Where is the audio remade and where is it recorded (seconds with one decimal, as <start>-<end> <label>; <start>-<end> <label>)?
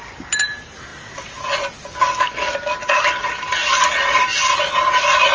0.0-5.3 recorded